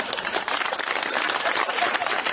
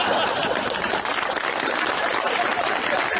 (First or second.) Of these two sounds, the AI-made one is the first